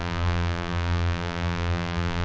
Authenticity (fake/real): fake